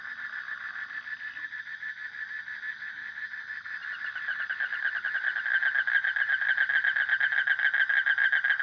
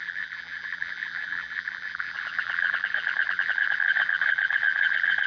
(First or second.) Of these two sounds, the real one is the first